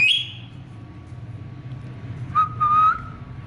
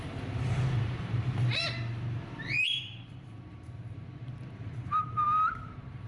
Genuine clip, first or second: first